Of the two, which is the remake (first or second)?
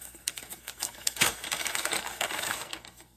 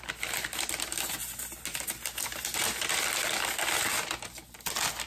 first